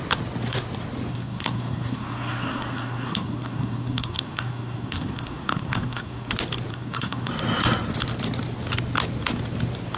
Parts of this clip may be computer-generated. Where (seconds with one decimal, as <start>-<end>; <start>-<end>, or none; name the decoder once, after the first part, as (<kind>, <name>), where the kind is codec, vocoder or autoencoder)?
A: 1.1-6.3 (codec, SNAC); 6.7-7.3